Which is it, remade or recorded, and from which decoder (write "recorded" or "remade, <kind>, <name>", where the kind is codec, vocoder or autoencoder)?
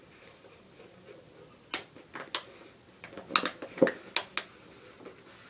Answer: recorded